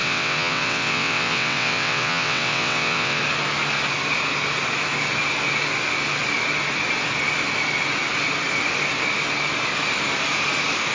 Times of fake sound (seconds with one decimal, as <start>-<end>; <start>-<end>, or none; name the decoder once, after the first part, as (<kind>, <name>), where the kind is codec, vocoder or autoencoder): 0.0-3.2 (vocoder, WaveNeXt)

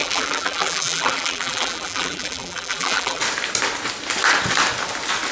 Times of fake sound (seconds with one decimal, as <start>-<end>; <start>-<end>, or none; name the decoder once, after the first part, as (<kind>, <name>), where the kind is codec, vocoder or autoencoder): 0.0-3.2 (vocoder, BigVGAN v2)

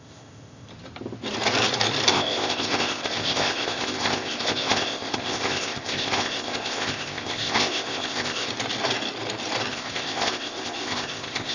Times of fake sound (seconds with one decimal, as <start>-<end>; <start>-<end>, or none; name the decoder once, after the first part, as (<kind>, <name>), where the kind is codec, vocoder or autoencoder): 0.0-0.7 (codec, ZipCodec); 2.1-8.5; 9.7-11.5

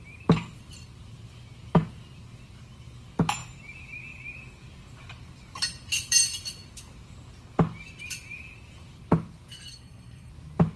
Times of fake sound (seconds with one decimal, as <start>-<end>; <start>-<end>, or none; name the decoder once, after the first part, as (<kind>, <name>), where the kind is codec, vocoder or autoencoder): 9.7-10.3 (codec, SNAC)

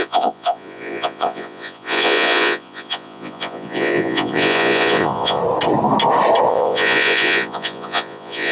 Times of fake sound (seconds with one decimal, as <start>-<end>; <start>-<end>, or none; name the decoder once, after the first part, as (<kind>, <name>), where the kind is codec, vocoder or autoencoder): 0.0-5.4 (vocoder, Vocos); 6.5-8.5